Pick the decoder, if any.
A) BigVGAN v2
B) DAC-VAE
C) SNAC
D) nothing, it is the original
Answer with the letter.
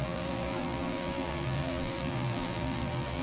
A